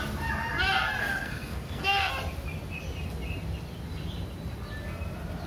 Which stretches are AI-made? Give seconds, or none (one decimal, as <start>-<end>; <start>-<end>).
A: 1.0-2.1